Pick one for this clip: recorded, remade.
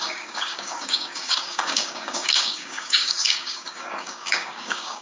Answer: remade